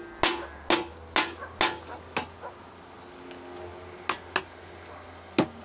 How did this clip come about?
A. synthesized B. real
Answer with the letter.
B